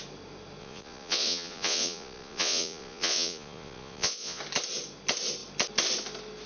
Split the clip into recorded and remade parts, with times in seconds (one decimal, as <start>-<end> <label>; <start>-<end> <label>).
0.0-0.6 recorded; 0.6-4.4 remade; 4.4-6.5 recorded